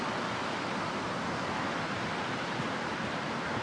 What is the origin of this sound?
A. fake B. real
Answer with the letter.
B